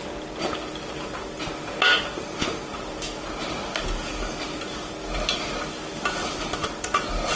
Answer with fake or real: real